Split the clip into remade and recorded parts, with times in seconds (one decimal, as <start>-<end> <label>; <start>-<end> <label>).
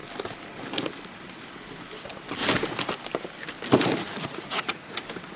0.0-4.1 recorded; 4.1-5.0 remade; 5.0-5.4 recorded